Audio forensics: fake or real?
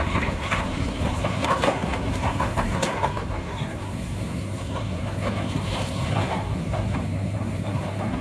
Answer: fake